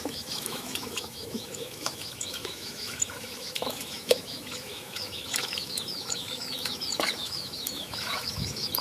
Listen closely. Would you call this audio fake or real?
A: fake